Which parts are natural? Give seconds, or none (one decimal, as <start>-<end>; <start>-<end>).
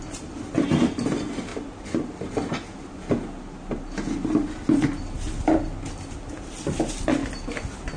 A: 0.0-8.0